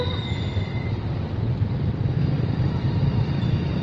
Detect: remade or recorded remade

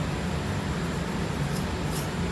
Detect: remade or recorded recorded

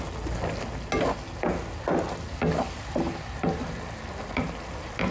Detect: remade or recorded recorded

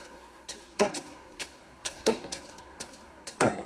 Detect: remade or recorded remade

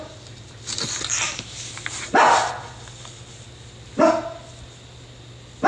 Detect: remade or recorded recorded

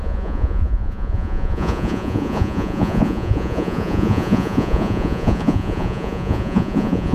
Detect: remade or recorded remade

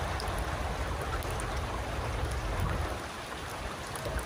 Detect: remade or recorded recorded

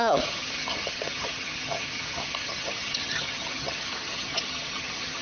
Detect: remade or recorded remade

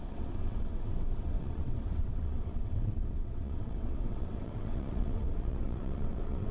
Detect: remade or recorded remade